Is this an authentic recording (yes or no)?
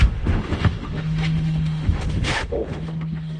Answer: no